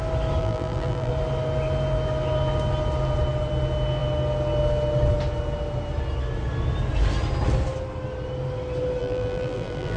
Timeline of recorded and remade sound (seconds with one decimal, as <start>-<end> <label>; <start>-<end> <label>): 0.0-0.4 recorded; 0.4-1.1 remade; 1.1-9.0 recorded; 9.0-10.0 remade